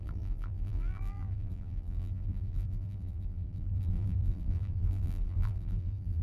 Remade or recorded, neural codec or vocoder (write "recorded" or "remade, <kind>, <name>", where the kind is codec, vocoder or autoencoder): remade, vocoder, BigVGAN v2